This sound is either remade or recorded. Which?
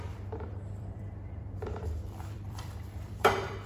remade